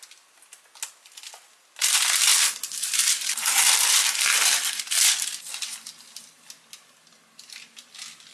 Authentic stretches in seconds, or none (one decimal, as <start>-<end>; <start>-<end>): 0.0-2.3; 4.8-8.3